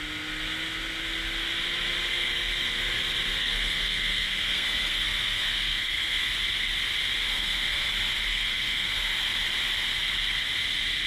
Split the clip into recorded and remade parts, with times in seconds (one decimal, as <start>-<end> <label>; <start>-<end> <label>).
0.0-2.1 recorded; 2.1-2.8 remade; 2.8-3.4 recorded; 3.4-6.3 remade; 6.3-7.3 recorded; 7.3-7.9 remade; 7.9-8.3 recorded; 8.3-9.0 remade; 9.0-11.1 recorded